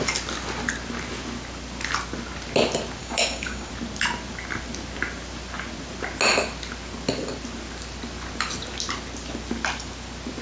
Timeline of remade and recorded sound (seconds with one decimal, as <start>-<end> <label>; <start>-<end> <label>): 0.0-3.0 recorded; 3.0-3.7 remade; 3.7-10.4 recorded